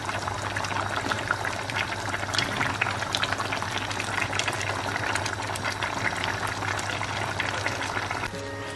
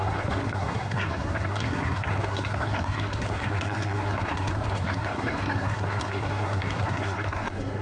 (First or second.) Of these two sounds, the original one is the first